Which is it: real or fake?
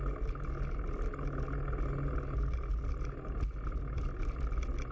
real